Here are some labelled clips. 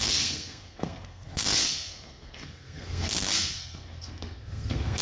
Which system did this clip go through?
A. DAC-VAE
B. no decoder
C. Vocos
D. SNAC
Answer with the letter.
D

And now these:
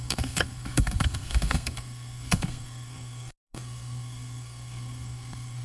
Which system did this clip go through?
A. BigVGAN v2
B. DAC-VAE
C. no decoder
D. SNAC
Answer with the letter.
D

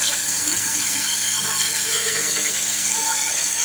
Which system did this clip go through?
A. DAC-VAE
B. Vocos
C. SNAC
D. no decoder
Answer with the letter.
C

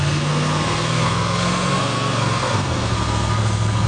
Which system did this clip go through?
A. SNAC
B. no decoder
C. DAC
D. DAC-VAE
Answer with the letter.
A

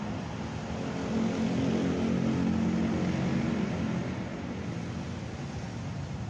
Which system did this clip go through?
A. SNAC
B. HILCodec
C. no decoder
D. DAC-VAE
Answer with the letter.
C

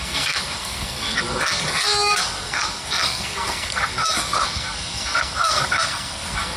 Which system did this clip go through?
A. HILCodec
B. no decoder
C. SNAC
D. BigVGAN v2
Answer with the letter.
C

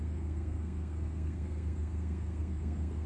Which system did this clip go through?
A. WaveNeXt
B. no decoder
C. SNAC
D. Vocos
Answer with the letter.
C